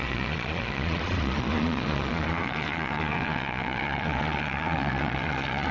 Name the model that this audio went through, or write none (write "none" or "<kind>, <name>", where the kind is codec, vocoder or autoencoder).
vocoder, Vocos